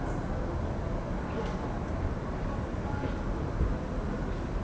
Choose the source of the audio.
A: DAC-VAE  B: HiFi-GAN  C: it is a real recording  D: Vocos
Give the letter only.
C